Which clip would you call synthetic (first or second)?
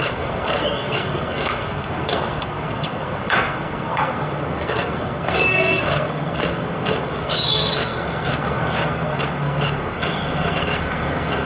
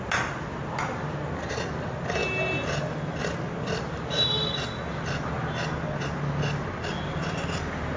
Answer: first